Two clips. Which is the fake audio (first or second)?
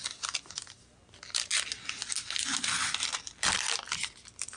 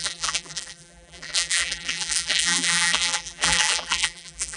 second